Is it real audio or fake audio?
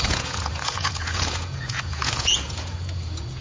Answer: fake